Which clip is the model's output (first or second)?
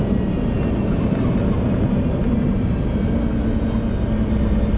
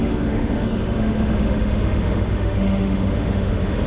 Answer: second